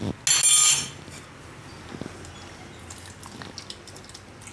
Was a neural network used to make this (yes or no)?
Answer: no